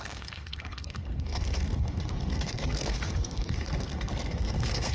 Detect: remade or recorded remade